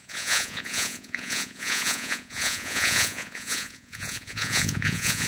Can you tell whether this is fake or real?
fake